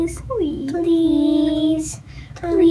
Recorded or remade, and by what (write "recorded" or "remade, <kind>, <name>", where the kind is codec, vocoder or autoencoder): remade, autoencoder, DAC-VAE